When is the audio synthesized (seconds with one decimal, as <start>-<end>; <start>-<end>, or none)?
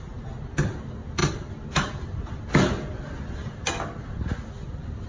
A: none